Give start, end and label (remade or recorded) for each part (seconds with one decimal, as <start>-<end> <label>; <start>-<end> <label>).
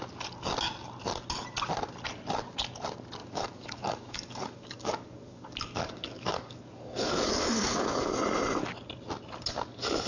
0.0-3.2 recorded; 3.2-8.1 remade; 8.1-10.1 recorded